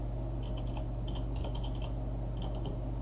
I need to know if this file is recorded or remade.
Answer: recorded